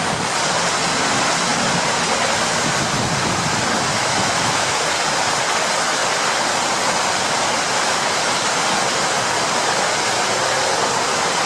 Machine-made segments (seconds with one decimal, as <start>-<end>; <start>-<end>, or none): 4.0-4.8